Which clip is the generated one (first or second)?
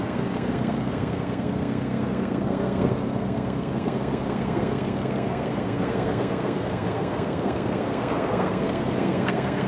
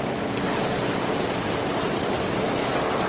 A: first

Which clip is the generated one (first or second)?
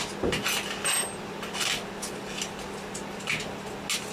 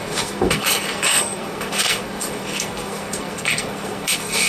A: second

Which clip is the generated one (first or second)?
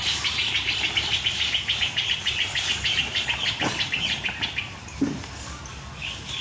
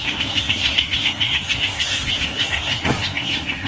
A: second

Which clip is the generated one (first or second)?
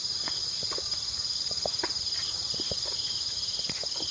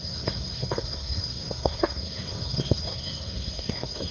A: second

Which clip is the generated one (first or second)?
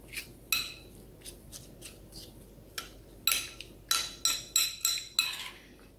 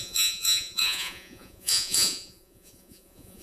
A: second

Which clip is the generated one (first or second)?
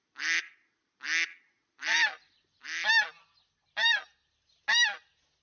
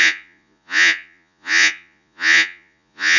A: second